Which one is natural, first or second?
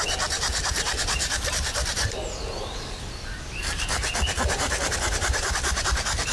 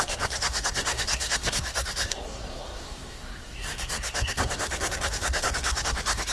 first